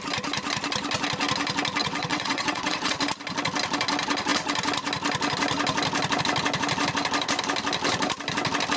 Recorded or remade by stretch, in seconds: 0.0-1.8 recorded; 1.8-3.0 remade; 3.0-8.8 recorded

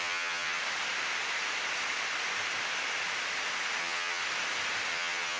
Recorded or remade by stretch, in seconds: 0.0-0.6 remade; 0.6-3.8 recorded; 3.8-4.2 remade; 4.2-4.9 recorded; 4.9-5.4 remade

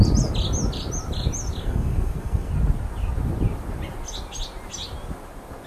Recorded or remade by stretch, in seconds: 0.0-1.6 recorded; 1.6-2.5 remade; 2.5-5.7 recorded

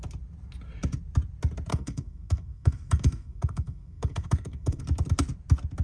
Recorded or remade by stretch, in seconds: 0.0-1.7 recorded; 1.7-4.8 remade; 4.8-5.8 recorded

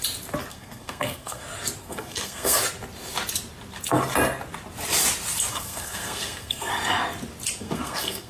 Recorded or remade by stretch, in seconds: 0.0-0.5 recorded; 0.5-1.4 remade; 1.4-1.8 recorded; 1.8-2.6 remade; 2.6-5.5 recorded; 5.5-6.7 remade; 6.7-7.6 recorded; 7.6-8.3 remade

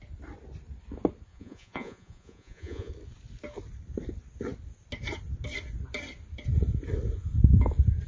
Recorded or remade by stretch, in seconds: 0.0-1.3 recorded; 1.3-2.9 remade; 2.9-8.1 recorded